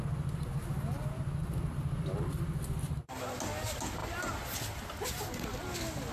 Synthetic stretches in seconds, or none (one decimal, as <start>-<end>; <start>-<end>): none